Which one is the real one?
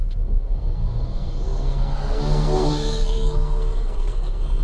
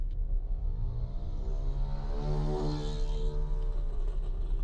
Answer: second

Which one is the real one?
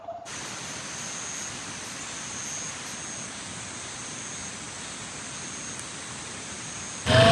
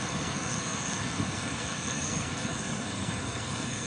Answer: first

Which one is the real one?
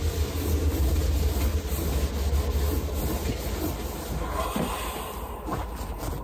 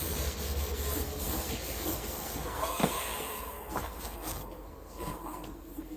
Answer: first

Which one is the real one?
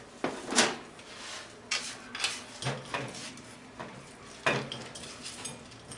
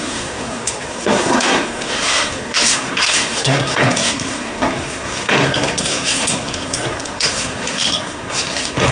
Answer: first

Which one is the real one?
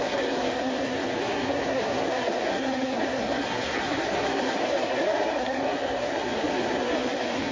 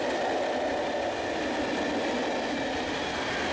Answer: second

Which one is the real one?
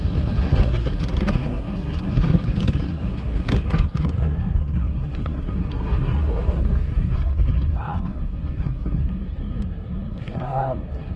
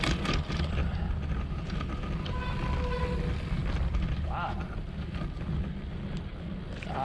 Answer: second